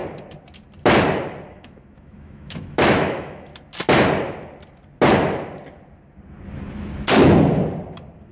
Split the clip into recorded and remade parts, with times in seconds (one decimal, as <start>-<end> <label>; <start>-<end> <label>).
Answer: 0.0-1.5 recorded; 1.5-3.5 remade; 3.5-8.3 recorded